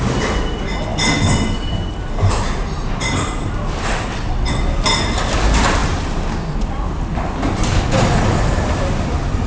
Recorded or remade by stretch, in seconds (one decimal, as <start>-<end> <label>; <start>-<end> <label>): 0.0-4.1 recorded; 4.1-4.6 remade; 4.6-9.5 recorded

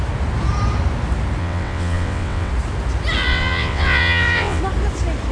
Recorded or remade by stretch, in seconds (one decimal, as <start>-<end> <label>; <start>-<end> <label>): 0.0-1.4 recorded; 1.4-2.5 remade; 2.5-3.3 recorded; 3.3-4.6 remade; 4.6-5.3 recorded

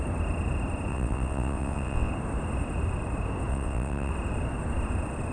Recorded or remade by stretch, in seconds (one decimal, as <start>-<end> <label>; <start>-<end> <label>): 0.0-0.9 recorded; 0.9-2.1 remade; 2.1-3.5 recorded; 3.5-4.1 remade; 4.1-5.3 recorded